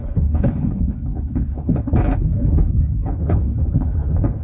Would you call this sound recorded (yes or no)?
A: no